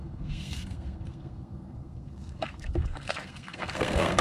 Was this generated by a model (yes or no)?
yes